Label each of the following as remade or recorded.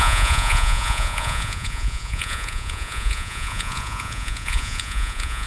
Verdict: remade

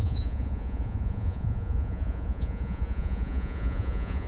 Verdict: remade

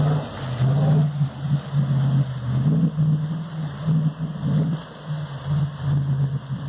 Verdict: recorded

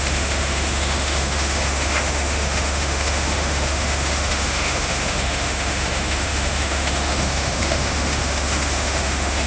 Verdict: remade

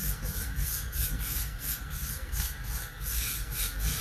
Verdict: remade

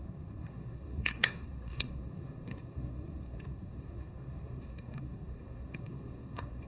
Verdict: remade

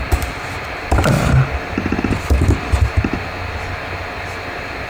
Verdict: recorded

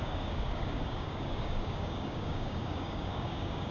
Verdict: remade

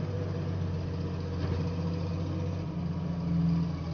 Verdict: recorded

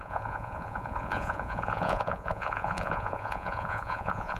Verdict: remade